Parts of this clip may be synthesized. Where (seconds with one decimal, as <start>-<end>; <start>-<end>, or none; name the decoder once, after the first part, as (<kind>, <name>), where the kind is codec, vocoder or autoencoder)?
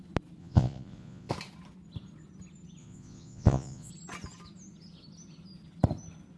0.4-1.3 (vocoder, Vocos); 2.8-3.9